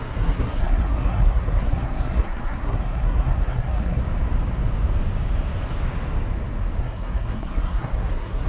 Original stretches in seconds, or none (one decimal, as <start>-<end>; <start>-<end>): 4.0-6.8